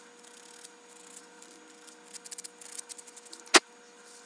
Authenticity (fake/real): real